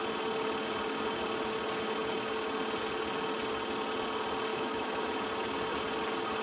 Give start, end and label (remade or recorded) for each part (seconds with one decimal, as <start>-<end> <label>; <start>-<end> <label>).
0.0-4.5 recorded; 4.5-5.1 remade; 5.1-6.4 recorded